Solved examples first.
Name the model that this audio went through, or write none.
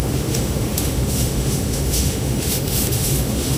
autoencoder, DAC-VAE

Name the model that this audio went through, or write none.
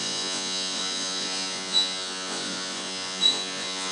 vocoder, Vocos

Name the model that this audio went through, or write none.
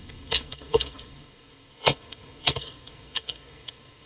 codec, SNAC